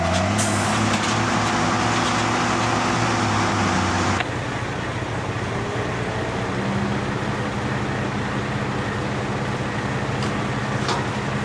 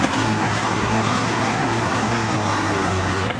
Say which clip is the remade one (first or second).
second